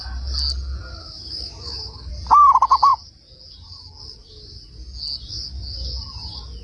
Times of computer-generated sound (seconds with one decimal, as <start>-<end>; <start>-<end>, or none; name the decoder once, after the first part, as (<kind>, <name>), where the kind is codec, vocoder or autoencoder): 1.0-2.1 (autoencoder, DAC-VAE)